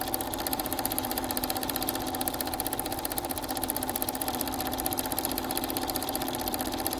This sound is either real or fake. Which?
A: fake